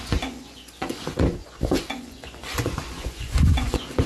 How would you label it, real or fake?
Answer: fake